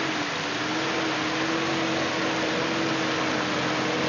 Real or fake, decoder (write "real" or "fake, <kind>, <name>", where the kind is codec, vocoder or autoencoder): real